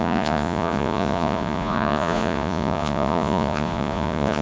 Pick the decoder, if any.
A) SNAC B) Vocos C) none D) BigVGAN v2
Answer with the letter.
B